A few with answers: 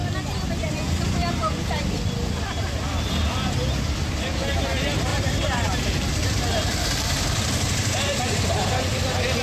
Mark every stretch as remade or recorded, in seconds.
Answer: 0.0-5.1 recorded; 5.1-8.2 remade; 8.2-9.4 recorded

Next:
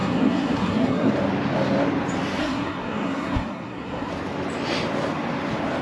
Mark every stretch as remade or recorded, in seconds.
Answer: 0.0-1.1 remade; 1.1-2.4 recorded; 2.4-4.1 remade; 4.1-5.8 recorded